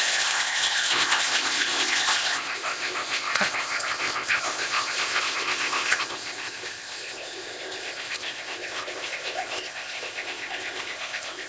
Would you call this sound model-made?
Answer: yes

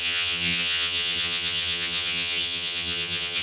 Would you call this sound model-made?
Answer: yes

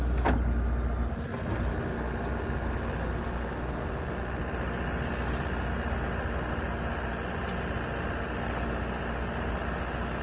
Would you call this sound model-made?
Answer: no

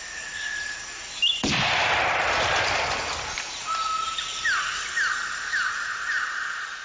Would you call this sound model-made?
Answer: no